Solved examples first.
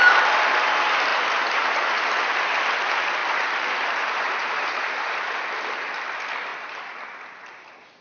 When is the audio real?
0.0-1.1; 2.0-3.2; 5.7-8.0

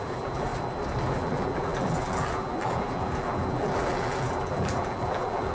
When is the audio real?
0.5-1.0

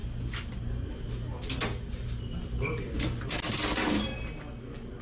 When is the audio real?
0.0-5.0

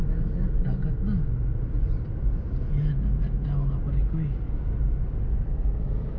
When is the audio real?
0.0-1.5; 2.4-6.2

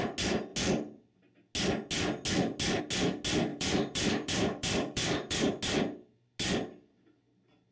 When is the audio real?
0.0-3.5; 5.6-7.7